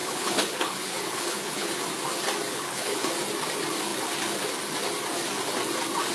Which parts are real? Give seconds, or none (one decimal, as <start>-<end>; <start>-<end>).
1.8-2.5; 3.1-6.1